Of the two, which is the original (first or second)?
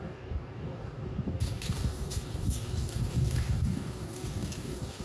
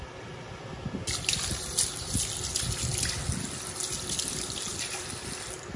second